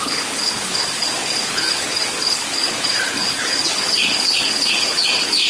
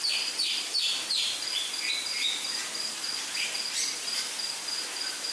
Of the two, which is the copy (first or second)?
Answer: first